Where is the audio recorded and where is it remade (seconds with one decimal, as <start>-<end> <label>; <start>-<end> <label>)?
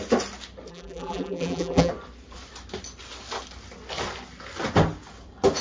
0.0-0.7 recorded; 0.7-1.9 remade; 1.9-5.6 recorded